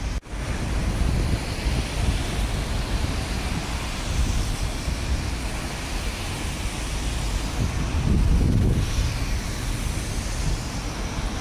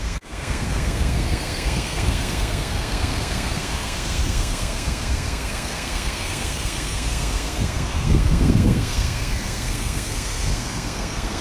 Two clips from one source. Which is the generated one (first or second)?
second